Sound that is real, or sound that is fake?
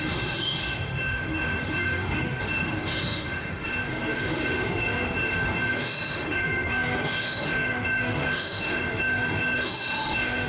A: fake